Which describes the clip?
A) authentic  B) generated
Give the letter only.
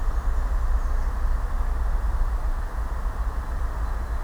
A